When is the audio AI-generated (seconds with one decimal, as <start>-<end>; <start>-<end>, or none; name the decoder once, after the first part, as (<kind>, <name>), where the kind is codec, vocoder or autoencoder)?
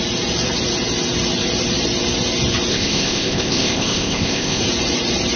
2.7-4.6 (codec, ZipCodec)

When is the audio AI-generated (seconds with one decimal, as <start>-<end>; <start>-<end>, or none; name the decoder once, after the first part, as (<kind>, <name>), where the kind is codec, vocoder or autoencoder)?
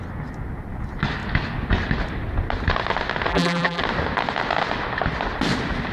3.3-3.8 (vocoder, BigVGAN v2)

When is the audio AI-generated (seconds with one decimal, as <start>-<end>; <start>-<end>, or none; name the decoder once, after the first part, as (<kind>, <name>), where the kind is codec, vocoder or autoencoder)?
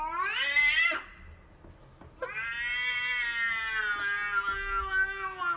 none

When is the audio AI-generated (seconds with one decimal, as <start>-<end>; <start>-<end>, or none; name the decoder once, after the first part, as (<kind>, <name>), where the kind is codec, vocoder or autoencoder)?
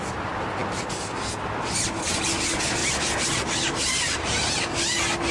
2.8-4.8 (vocoder, BigVGAN v2)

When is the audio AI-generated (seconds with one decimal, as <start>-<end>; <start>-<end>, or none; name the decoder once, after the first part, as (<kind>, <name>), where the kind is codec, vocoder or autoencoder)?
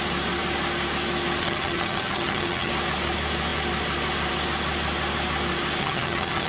1.4-2.7 (vocoder, HiFi-GAN); 5.8-6.5